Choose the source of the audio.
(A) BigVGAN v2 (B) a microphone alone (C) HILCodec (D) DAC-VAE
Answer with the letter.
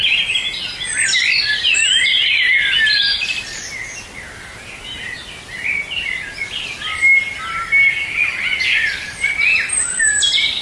B